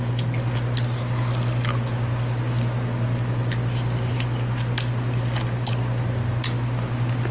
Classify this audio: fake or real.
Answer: real